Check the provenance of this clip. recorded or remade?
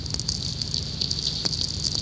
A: recorded